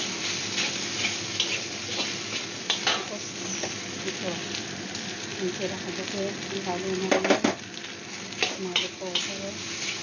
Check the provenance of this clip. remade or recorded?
recorded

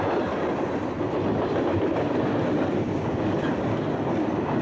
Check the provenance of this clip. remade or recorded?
recorded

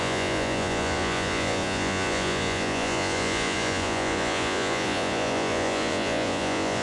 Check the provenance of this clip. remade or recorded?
remade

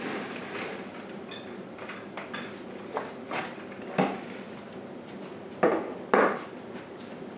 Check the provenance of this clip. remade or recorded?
recorded